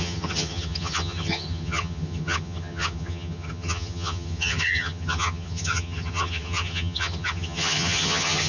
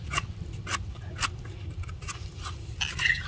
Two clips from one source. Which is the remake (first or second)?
first